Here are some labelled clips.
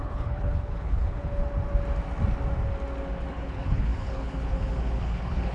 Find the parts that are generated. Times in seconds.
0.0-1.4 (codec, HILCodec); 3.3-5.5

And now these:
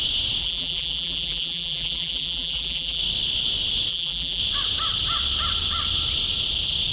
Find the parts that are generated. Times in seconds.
0.4-3.0 (vocoder, BigVGAN v2); 3.9-4.4

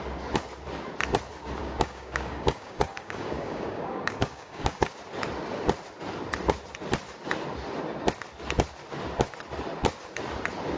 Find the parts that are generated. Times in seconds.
1.6-4.9 (codec, DAC)

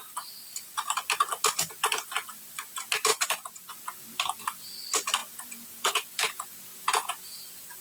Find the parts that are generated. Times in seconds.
3.1-3.7 (vocoder, Vocos); 5.2-7.8

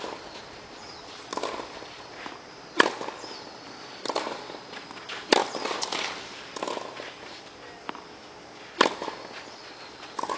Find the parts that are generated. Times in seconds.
none